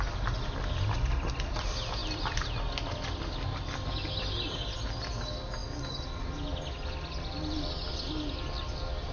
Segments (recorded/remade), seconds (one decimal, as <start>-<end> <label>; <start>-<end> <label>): 0.0-9.1 recorded